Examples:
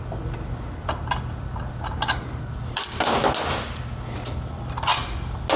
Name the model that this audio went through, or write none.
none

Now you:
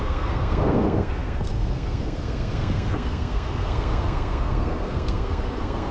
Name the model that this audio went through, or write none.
codec, SNAC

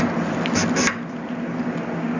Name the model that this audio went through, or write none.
none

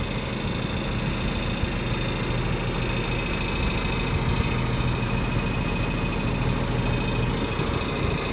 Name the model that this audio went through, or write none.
none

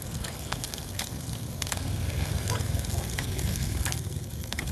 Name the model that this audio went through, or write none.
codec, SNAC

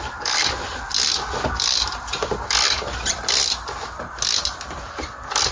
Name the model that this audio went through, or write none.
none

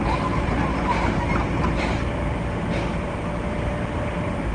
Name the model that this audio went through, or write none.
vocoder, BigVGAN v2